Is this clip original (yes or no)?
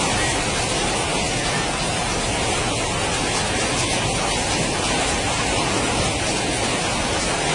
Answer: yes